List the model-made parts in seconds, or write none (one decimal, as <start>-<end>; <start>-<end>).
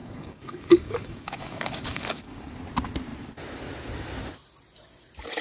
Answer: 0.0-2.5